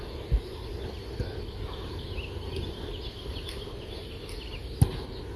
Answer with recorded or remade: recorded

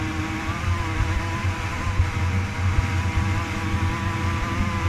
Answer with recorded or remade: recorded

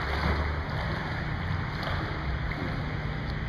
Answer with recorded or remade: recorded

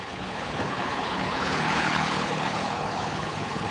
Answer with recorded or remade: remade